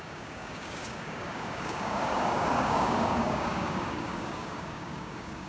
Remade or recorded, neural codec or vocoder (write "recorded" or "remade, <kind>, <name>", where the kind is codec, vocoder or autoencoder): remade, codec, DAC